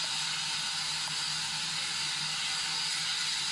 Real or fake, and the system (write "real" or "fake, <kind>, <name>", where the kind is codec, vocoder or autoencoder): real